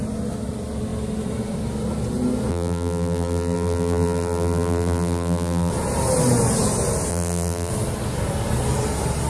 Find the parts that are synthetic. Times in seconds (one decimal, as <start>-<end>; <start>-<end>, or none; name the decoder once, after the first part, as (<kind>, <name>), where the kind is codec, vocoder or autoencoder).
2.5-5.7 (vocoder, BigVGAN v2); 7.1-7.7